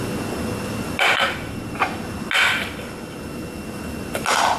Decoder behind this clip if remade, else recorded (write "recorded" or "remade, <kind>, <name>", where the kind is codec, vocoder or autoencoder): recorded